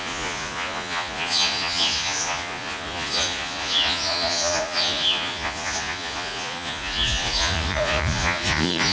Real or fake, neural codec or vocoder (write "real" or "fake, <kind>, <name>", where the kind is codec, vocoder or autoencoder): fake, vocoder, Vocos